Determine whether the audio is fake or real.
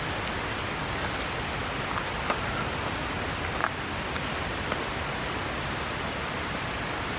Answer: real